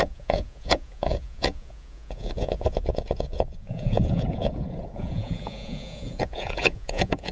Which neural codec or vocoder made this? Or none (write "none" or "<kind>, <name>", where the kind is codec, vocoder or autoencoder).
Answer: vocoder, Vocos